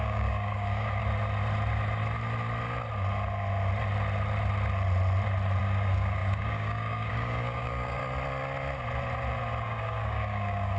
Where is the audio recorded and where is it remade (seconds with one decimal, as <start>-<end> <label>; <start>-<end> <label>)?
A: 0.0-1.0 remade; 1.0-5.6 recorded; 5.6-8.0 remade; 8.0-9.6 recorded; 9.6-10.8 remade